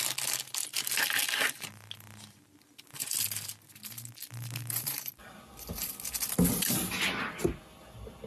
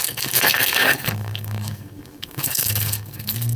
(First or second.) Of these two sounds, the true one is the first